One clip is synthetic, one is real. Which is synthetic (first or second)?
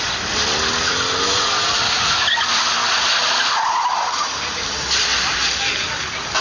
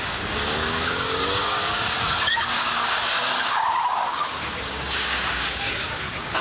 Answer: second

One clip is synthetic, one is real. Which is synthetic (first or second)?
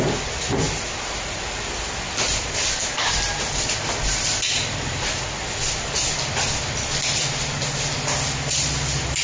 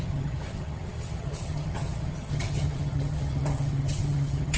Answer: second